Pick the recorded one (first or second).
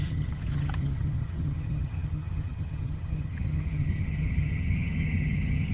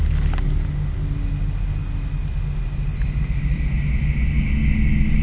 second